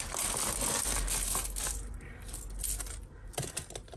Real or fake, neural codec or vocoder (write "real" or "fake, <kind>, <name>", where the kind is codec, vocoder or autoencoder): real